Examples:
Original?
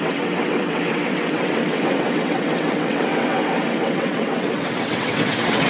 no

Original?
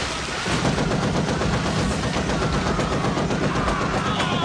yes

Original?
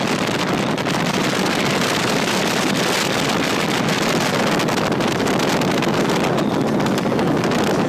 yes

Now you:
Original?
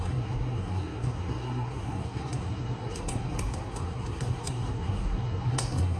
no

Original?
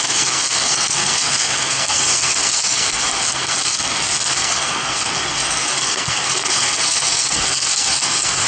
no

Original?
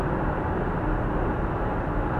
yes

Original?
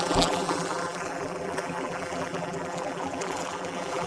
no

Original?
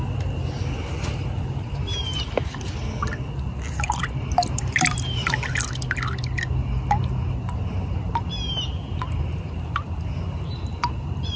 yes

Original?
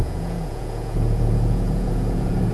no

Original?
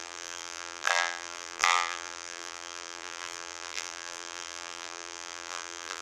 no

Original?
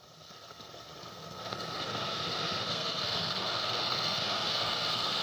no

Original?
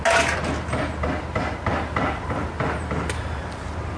yes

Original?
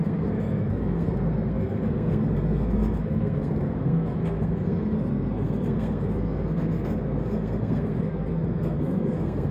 no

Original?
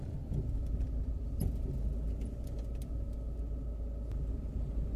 yes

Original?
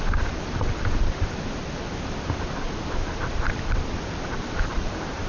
no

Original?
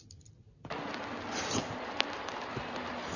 yes